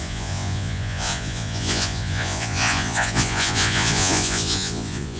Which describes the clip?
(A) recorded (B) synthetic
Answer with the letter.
B